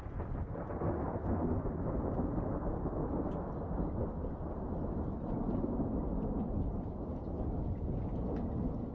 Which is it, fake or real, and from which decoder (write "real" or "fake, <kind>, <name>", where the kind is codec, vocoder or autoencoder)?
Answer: real